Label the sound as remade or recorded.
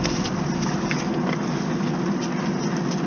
recorded